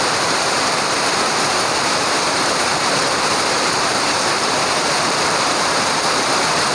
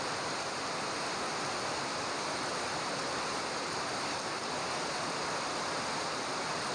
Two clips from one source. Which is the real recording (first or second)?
second